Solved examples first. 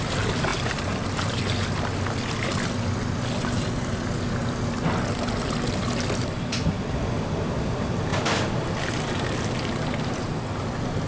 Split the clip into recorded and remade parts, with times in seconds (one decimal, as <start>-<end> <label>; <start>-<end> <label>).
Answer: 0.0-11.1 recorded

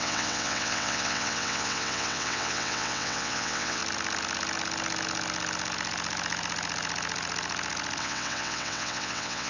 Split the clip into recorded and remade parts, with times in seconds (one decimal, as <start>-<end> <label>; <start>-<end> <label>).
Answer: 0.0-3.8 remade; 3.8-8.0 recorded; 8.0-9.5 remade

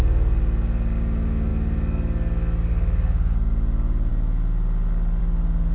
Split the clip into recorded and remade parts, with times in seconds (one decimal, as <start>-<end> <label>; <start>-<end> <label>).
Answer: 0.0-5.7 recorded

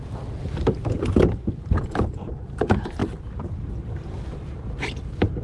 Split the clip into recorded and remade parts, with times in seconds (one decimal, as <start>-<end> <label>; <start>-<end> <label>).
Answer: 0.0-5.4 remade

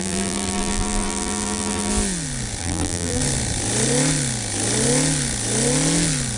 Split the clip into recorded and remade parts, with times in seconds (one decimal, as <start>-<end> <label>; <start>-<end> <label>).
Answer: 0.0-1.9 remade; 1.9-2.6 recorded; 2.6-3.2 remade; 3.2-6.4 recorded

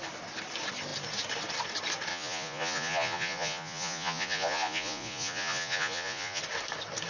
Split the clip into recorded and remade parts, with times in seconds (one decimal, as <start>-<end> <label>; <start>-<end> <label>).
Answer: 0.0-2.1 recorded; 2.1-6.4 remade; 6.4-7.1 recorded

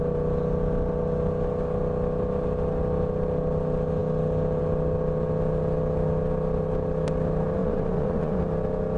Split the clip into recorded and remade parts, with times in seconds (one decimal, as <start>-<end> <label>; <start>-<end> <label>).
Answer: 0.0-7.6 recorded; 7.6-8.4 remade; 8.4-9.0 recorded